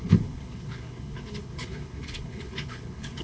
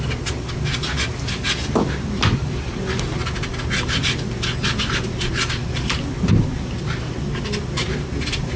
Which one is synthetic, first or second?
first